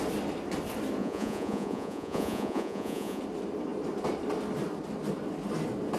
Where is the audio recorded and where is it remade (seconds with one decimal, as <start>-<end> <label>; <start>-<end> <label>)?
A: 0.0-1.0 recorded; 1.0-3.2 remade; 3.2-6.0 recorded